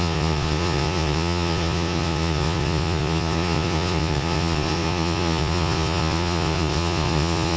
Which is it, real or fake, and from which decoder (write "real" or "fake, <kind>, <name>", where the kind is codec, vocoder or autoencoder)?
fake, vocoder, Vocos